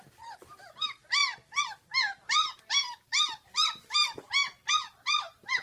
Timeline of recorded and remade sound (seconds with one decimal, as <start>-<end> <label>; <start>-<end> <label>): 0.0-1.2 remade; 1.2-2.2 recorded; 2.2-4.0 remade; 4.0-4.7 recorded; 4.7-5.6 remade